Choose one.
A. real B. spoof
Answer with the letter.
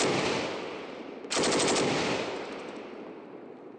A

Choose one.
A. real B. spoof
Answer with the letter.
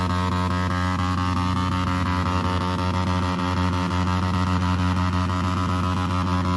A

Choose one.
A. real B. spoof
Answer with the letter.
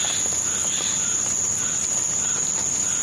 A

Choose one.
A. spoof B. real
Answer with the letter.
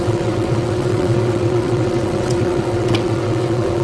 A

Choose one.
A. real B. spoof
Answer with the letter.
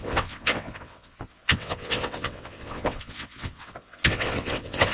B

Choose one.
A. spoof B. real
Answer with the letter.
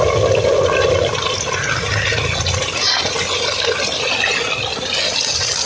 B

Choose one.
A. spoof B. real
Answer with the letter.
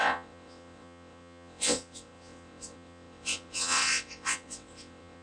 A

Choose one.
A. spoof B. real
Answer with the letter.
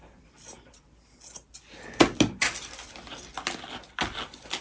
B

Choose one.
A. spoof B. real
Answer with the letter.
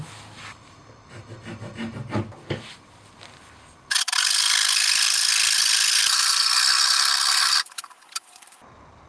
B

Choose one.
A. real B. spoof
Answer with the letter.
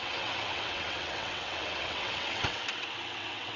B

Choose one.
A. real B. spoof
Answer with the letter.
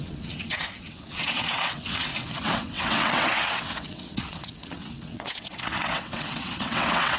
B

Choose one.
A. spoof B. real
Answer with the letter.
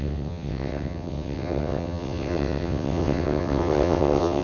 A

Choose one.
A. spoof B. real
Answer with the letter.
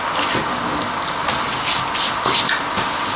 B